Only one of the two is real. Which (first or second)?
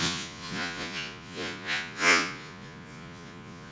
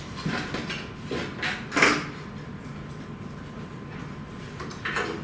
second